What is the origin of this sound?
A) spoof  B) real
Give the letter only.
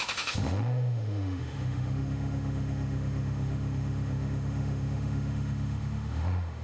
A